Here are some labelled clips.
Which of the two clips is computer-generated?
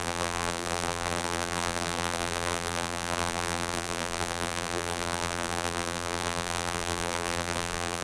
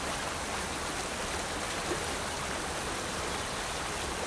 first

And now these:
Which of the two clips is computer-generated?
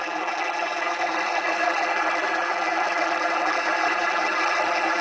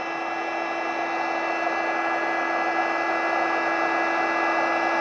first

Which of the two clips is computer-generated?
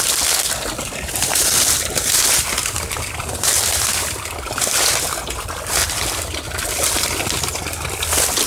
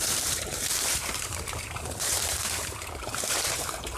second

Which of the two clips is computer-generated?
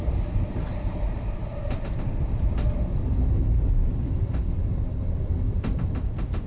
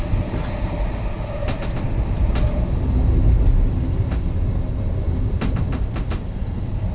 first